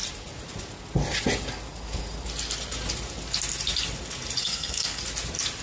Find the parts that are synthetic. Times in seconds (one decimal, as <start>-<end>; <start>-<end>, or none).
4.4-5.0